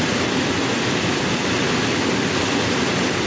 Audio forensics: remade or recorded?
recorded